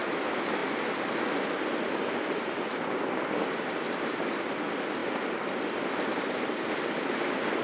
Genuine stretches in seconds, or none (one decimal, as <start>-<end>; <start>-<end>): 0.0-7.6

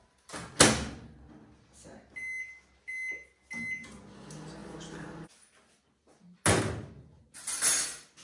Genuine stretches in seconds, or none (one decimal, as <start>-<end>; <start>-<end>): 0.0-8.2

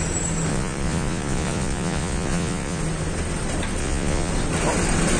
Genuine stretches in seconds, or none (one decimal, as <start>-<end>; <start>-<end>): 0.0-0.5; 2.8-3.8; 4.3-5.2

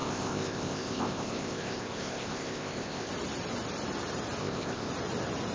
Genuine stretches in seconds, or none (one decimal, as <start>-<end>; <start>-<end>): 3.1-4.4; 4.9-5.5

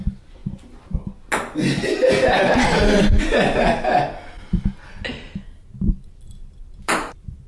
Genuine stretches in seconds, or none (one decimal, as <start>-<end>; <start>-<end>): 0.0-7.5